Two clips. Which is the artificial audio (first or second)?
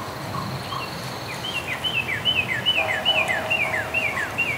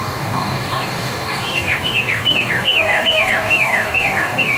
second